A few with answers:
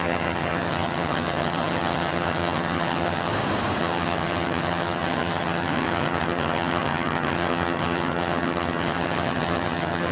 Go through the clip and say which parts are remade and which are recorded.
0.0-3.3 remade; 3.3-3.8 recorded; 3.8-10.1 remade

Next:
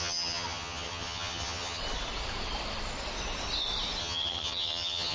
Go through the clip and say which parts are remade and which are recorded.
0.0-1.8 remade; 1.8-4.0 recorded; 4.0-5.1 remade

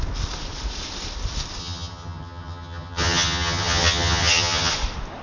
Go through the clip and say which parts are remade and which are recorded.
0.0-1.6 recorded; 1.6-4.7 remade; 4.7-5.2 recorded

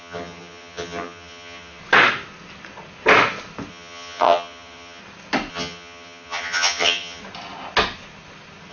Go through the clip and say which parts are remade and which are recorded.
0.0-1.8 remade; 1.8-3.7 recorded; 3.7-5.0 remade; 5.0-5.5 recorded; 5.5-7.2 remade; 7.2-8.7 recorded

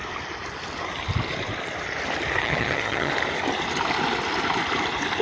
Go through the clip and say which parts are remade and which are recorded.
0.0-2.4 recorded; 2.4-3.1 remade; 3.1-5.2 recorded